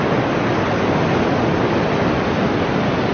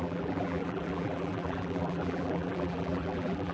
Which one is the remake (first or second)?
second